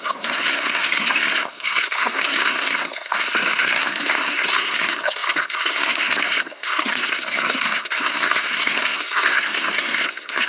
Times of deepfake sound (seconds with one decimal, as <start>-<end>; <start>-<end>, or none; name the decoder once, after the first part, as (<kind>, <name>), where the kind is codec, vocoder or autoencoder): 0.0-10.5 (codec, SNAC)